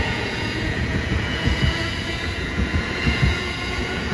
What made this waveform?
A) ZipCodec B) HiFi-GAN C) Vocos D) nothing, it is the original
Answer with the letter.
C